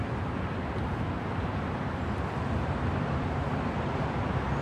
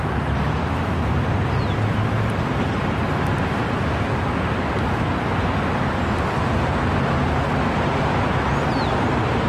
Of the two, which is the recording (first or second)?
second